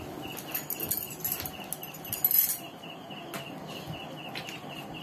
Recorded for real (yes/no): yes